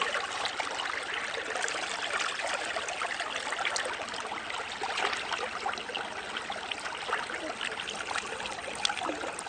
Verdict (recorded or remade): recorded